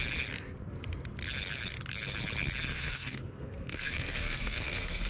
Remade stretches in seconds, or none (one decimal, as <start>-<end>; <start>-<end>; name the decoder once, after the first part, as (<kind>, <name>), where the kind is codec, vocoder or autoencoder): 2.7-5.1 (codec, SNAC)